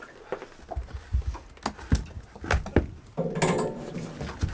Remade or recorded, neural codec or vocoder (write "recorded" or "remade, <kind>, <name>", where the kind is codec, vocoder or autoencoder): recorded